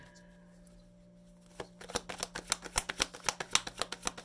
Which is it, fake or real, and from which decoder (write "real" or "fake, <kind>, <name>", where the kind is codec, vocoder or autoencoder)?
real